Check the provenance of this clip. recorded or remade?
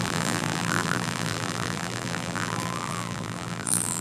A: remade